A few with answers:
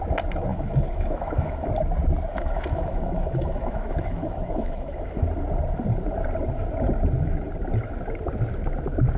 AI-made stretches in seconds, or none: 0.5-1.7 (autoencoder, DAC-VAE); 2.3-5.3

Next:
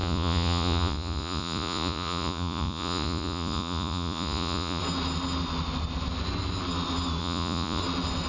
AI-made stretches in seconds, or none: 0.0-4.8 (vocoder, Vocos); 7.2-7.8

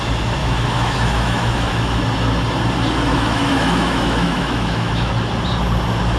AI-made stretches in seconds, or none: 0.4-2.0 (autoencoder, DAC-VAE); 3.1-5.1

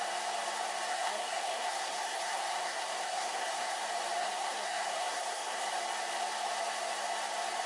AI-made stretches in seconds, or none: 0.9-3.8 (codec, SNAC); 4.2-5.7

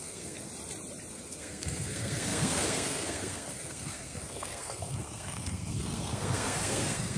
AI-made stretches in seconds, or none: 0.0-0.5 (codec, SNAC); 1.1-7.2

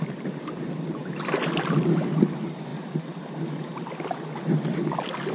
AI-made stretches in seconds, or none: none